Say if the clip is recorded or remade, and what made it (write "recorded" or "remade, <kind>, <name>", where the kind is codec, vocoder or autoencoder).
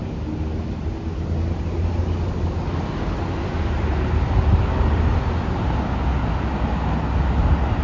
recorded